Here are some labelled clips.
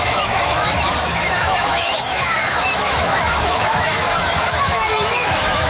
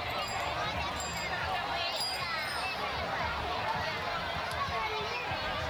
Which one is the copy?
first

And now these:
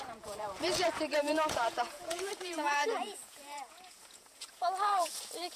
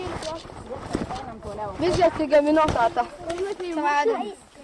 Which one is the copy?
first